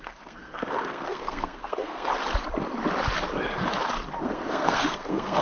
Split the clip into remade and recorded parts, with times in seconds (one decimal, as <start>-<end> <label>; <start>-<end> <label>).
0.0-2.1 remade; 2.1-4.2 recorded; 4.2-5.4 remade